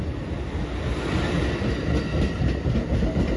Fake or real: real